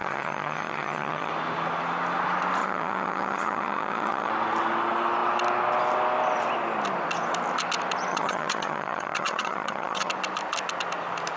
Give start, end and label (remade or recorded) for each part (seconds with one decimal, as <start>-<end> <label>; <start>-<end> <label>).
0.0-1.3 remade; 1.3-2.6 recorded; 2.6-4.3 remade; 4.3-8.1 recorded; 8.1-10.1 remade; 10.1-11.4 recorded